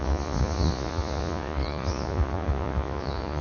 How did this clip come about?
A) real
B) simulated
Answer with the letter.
B